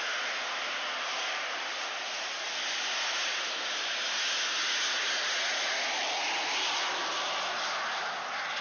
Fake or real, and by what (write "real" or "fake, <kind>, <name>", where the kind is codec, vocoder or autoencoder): real